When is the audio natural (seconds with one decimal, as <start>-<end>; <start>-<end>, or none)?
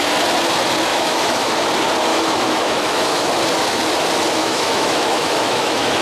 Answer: 0.0-0.9; 1.5-2.1; 3.3-4.4